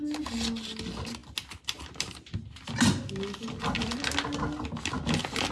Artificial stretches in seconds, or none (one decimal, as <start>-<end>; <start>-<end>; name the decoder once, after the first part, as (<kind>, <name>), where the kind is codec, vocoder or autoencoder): none